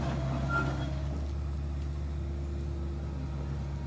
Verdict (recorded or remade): recorded